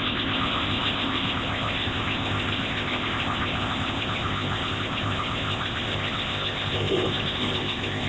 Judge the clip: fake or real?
fake